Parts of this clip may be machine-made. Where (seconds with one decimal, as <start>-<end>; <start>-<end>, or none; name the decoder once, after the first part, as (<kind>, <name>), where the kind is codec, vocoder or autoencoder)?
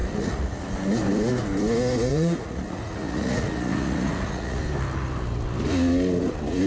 0.0-0.7 (vocoder, Vocos); 2.1-4.6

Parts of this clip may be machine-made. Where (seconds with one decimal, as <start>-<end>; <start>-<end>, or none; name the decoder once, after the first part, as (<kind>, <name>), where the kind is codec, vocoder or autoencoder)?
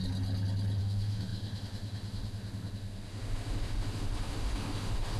0.8-5.2 (autoencoder, DAC-VAE)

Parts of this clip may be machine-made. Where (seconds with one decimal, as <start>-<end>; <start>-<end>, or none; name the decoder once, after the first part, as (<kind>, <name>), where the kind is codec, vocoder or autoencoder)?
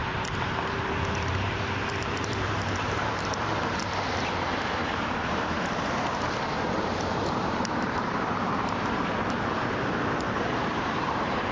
0.0-3.5 (vocoder, BigVGAN v2); 4.1-11.5